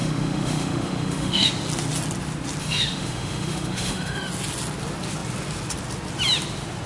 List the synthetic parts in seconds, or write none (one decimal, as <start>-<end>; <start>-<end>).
0.0-1.5; 2.6-4.3

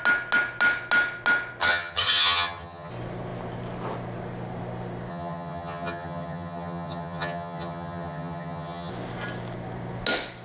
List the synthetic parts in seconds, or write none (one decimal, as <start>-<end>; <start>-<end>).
1.6-2.9; 5.1-8.9

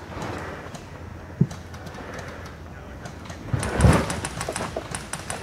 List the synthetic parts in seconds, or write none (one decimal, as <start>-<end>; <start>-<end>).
none

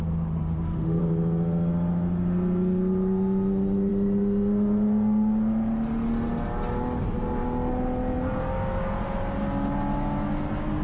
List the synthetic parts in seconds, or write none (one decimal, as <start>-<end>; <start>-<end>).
0.4-1.0

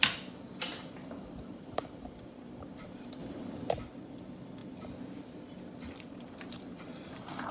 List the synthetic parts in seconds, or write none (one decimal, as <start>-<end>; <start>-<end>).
0.0-4.6; 6.5-7.5

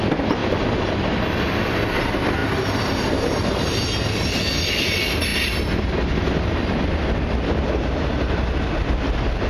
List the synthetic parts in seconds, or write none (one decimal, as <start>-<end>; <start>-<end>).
0.4-0.9; 2.4-3.5

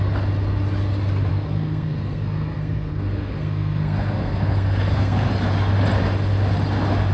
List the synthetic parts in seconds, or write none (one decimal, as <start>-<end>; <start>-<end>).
1.3-5.3